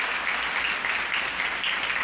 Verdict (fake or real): real